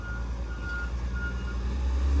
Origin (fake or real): real